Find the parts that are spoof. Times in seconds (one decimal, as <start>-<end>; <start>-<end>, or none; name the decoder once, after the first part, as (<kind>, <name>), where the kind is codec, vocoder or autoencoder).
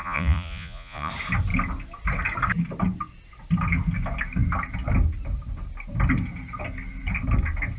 0.0-1.1 (vocoder, Vocos)